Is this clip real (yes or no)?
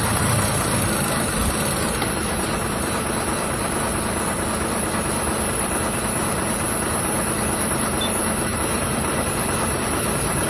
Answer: no